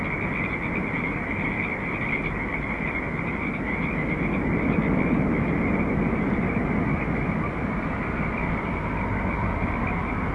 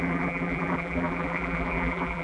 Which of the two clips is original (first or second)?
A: first